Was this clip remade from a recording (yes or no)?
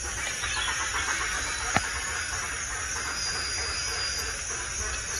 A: no